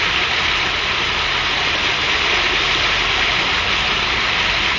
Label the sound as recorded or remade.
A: recorded